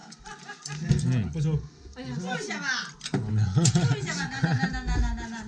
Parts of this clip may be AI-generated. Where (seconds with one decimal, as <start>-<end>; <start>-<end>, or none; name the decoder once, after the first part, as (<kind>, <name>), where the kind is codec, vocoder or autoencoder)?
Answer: none

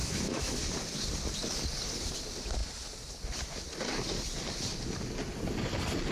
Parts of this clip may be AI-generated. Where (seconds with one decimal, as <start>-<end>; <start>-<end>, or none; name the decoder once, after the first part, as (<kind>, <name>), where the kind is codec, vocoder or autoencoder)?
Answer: 0.0-0.6 (autoencoder, DAC-VAE)

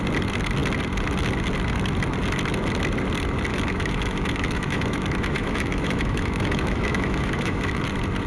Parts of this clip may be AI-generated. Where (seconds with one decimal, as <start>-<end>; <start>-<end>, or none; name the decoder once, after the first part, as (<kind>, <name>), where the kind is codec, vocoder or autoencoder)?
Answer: 3.5-7.8 (autoencoder, DAC-VAE)

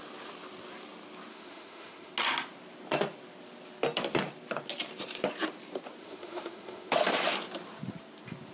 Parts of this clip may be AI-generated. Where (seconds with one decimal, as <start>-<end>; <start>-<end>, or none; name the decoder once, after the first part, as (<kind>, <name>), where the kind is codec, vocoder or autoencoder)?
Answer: 1.3-2.1 (autoencoder, DAC-VAE); 6.0-6.9